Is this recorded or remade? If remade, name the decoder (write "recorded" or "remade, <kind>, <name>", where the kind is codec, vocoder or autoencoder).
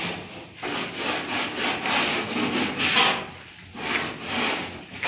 recorded